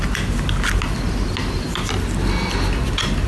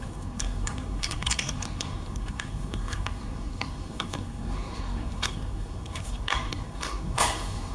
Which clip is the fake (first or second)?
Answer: second